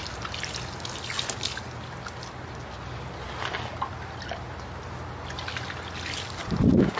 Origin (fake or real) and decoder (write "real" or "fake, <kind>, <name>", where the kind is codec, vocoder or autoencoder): real